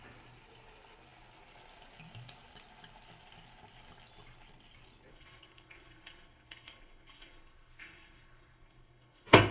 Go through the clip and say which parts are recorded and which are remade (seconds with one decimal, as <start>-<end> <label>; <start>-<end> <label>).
0.0-5.1 recorded; 5.1-9.5 remade